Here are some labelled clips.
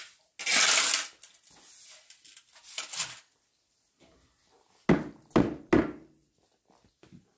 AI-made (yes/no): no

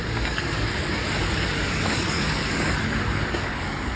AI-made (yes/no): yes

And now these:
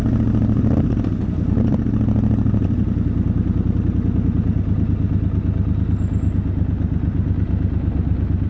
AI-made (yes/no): no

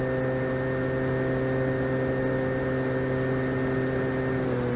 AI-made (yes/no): no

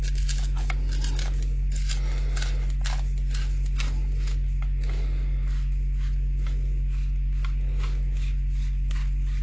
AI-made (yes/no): no